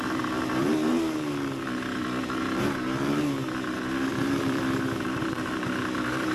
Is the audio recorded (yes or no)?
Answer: no